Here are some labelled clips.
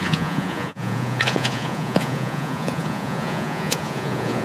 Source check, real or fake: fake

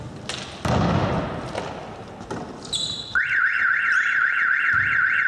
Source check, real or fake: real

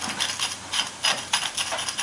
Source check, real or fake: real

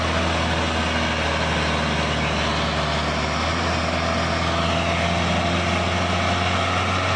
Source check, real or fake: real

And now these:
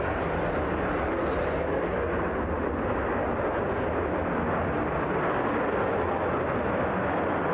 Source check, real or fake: real